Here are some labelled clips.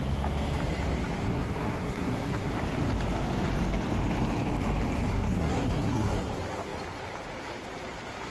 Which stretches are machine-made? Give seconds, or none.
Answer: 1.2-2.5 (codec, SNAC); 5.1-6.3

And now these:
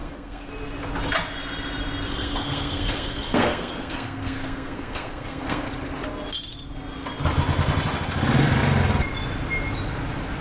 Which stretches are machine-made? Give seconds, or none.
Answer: 0.0-0.5 (codec, SNAC); 2.1-5.7

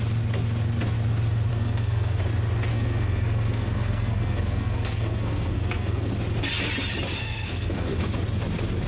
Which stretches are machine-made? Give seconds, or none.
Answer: 1.5-2.2 (codec, SNAC); 2.7-6.1; 7.2-8.0

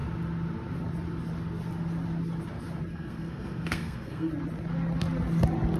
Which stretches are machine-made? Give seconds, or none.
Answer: 2.9-4.3 (codec, SNAC)

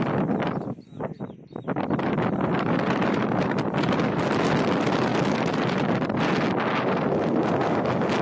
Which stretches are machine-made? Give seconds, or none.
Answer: none

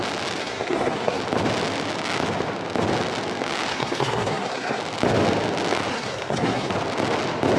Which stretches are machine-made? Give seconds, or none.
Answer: 0.4-1.2 (codec, SNAC); 3.7-4.8; 5.9-6.7

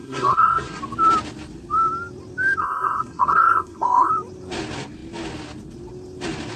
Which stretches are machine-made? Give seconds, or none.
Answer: 0.0-0.8 (codec, SNAC); 2.6-4.1

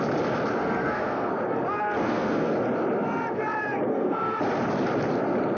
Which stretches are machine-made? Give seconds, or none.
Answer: 0.6-1.3 (codec, SNAC); 2.0-2.5; 3.9-4.4